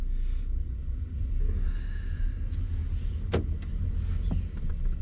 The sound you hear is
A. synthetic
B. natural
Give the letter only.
B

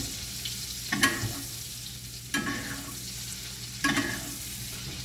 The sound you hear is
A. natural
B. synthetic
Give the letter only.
A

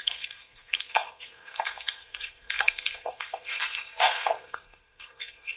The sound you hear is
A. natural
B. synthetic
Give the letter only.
B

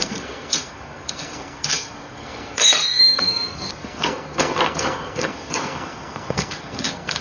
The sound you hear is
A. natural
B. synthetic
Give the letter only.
B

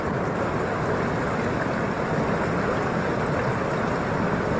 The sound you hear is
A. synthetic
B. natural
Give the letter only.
B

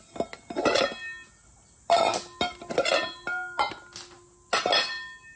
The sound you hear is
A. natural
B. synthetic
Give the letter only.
A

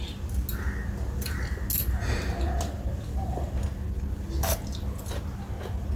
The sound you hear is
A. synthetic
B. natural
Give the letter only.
B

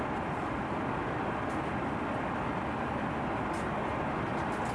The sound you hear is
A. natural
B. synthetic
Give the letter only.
A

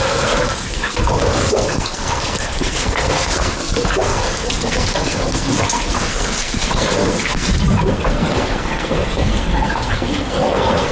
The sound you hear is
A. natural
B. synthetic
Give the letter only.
B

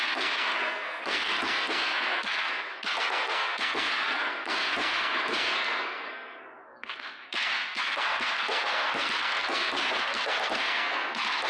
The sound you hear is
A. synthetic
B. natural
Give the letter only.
A